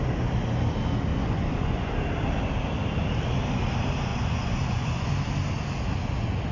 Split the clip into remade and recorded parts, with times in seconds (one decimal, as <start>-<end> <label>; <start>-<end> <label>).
0.0-1.1 recorded; 1.1-1.9 remade; 1.9-4.1 recorded; 4.1-5.1 remade; 5.1-6.5 recorded